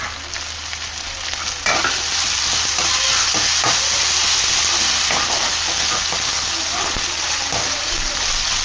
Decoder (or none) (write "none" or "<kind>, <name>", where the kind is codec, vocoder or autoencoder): none